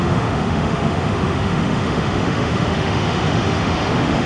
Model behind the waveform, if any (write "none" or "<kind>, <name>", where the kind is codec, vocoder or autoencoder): autoencoder, DAC-VAE